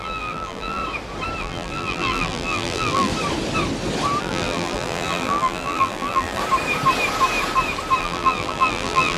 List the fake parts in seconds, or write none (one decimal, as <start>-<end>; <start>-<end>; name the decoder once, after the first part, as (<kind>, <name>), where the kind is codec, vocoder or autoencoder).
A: 0.0-0.8 (vocoder, BigVGAN v2); 1.4-3.1; 4.2-6.4; 8.0-9.2